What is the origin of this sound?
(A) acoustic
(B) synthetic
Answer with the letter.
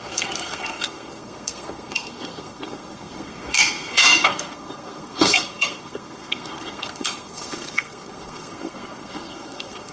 B